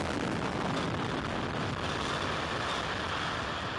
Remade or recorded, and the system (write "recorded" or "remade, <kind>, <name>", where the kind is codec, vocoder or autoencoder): recorded